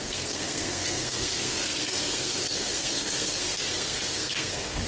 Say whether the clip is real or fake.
fake